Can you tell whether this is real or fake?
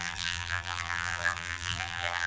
fake